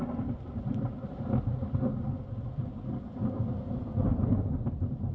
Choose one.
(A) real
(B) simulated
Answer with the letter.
A